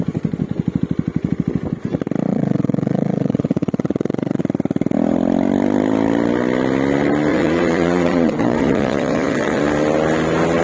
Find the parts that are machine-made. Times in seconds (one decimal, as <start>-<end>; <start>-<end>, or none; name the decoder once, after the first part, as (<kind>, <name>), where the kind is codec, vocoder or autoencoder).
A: 2.3-4.4 (vocoder, Vocos); 7.3-9.6